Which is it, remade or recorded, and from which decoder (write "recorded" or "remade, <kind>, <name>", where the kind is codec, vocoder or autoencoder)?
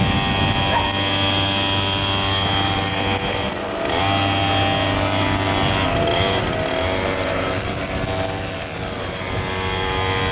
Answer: recorded